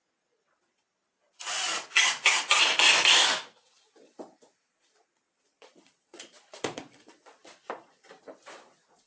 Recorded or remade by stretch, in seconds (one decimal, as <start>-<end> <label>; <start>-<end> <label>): 0.0-4.7 recorded; 4.7-7.9 remade; 7.9-9.1 recorded